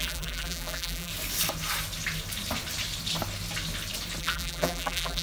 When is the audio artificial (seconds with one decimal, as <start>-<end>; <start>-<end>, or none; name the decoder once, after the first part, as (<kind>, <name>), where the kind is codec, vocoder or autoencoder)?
0.0-1.1 (vocoder, BigVGAN v2); 4.2-5.2